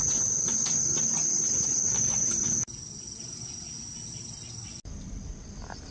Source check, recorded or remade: recorded